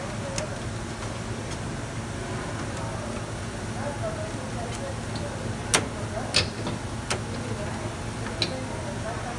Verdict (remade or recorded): recorded